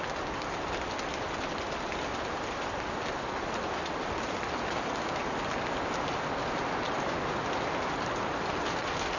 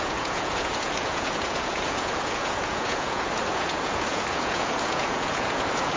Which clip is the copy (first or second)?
second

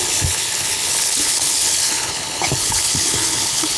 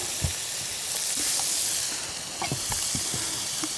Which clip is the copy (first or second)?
first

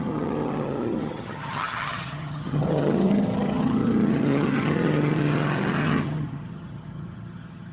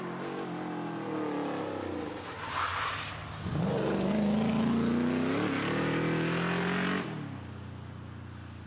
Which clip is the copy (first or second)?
first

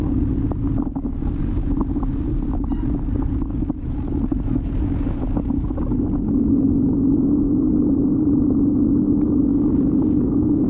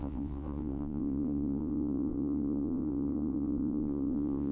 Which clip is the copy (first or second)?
second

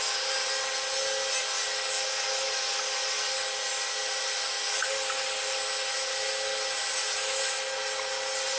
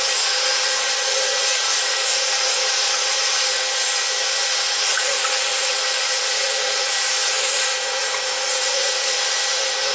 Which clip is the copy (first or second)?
second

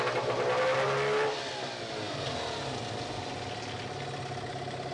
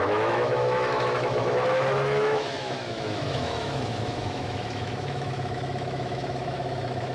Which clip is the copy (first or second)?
second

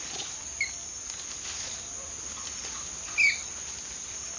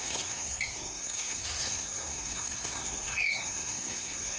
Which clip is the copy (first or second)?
second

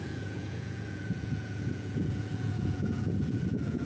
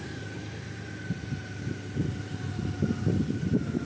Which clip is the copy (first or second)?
first